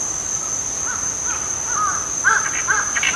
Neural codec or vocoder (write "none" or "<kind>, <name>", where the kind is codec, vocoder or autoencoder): none